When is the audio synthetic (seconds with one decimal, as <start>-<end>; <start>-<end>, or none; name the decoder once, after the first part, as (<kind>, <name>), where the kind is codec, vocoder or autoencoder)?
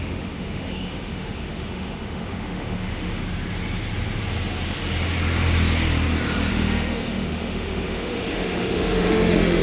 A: 0.0-3.2 (autoencoder, DAC-VAE); 6.5-9.6